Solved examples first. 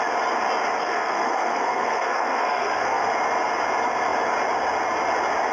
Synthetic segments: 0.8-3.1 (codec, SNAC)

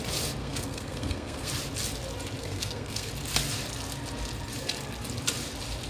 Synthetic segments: 0.4-1.5 (codec, SNAC); 2.4-3.1

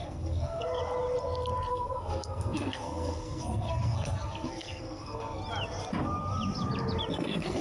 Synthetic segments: 0.0-0.8 (codec, SNAC); 1.7-5.4; 7.1-7.6

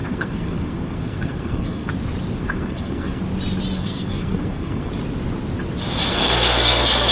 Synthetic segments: 0.0-1.9 (codec, SNAC); 2.4-3.2; 3.8-4.9; 6.1-7.1

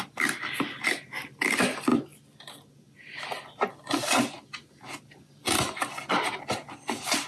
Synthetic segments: none